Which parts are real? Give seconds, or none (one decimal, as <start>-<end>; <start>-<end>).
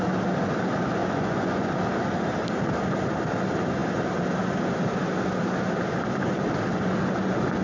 0.0-1.0; 1.7-7.6